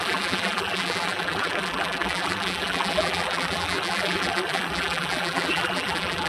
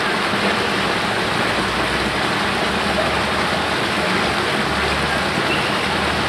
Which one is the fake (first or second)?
first